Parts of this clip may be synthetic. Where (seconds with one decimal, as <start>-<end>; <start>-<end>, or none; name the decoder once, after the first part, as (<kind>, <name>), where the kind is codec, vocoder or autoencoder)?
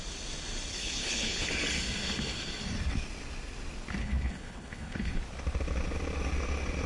0.7-1.5 (codec, HILCodec); 4.0-5.2